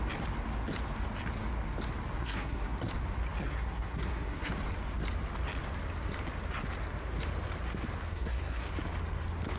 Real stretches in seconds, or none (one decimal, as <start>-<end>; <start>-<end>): 0.0-2.2; 2.7-3.4; 4.5-8.1; 8.7-9.6

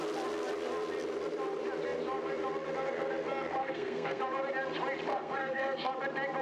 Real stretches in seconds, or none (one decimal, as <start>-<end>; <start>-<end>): 0.0-3.6; 4.2-5.1; 5.9-6.4

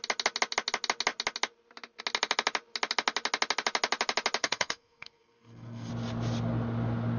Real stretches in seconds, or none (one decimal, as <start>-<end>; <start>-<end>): 0.0-4.4; 5.9-7.2

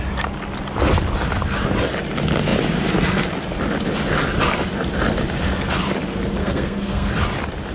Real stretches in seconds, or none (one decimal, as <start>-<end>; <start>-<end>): 0.0-6.4; 7.1-7.7

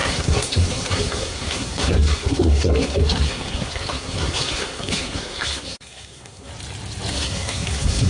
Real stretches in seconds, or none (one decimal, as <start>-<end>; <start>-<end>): 6.5-7.1

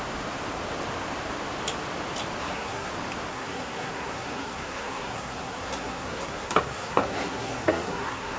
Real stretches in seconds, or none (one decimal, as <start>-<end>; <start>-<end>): 0.0-2.4; 2.9-3.3